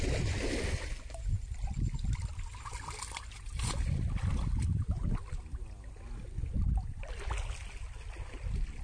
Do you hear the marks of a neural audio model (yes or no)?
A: no